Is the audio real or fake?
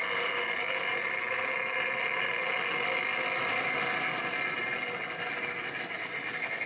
real